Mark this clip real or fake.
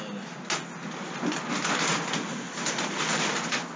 real